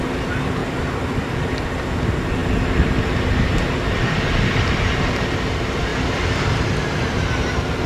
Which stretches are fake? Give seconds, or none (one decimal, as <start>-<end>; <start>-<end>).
0.6-1.7; 5.9-7.2